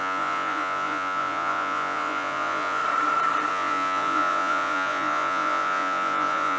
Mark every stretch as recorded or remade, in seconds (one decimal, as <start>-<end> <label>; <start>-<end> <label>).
0.0-2.8 remade; 2.8-3.5 recorded; 3.5-6.6 remade